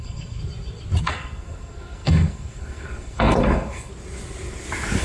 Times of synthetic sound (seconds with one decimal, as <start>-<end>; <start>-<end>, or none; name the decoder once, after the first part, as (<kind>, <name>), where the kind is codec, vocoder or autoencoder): 0.0-0.4 (codec, SNAC); 1.0-3.9